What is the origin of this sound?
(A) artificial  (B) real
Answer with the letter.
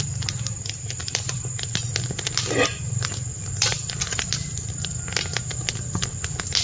B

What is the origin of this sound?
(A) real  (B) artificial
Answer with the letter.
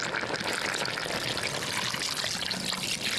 A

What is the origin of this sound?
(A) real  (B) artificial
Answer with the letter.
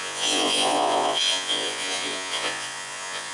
B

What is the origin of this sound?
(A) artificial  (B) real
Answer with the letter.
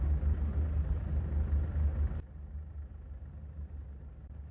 B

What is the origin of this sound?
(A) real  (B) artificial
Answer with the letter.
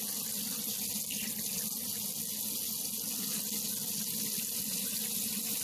A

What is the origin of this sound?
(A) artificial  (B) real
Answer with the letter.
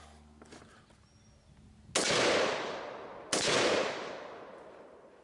B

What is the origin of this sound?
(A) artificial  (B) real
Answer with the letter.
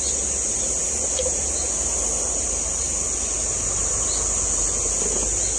B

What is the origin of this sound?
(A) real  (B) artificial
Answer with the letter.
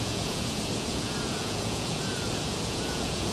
B